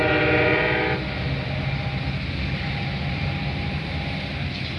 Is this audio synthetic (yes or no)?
no